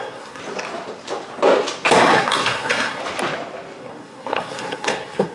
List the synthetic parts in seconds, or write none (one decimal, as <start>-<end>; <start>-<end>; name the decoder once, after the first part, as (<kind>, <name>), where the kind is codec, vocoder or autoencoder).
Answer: 0.0-0.4 (codec, SNAC); 2.0-3.0; 3.8-5.3